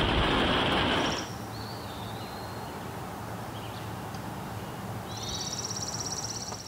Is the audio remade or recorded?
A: recorded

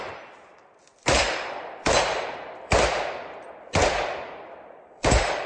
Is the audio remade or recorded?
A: remade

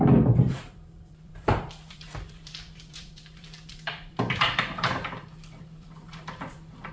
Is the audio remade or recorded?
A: remade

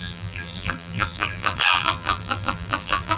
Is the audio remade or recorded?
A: remade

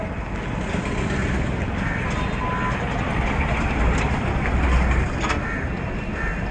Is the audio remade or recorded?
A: recorded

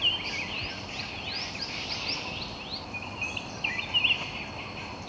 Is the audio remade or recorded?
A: recorded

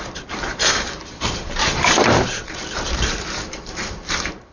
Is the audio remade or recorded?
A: remade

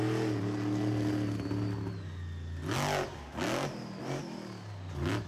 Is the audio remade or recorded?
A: recorded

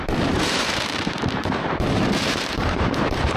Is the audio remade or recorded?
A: remade